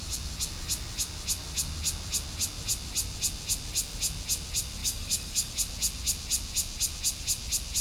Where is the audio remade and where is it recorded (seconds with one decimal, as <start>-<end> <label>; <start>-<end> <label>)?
0.0-4.8 recorded; 4.8-5.5 remade; 5.5-7.8 recorded